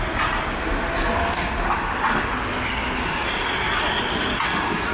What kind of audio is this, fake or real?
real